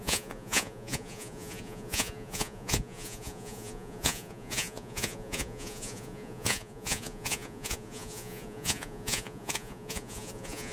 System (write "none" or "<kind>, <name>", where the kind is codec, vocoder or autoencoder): vocoder, Vocos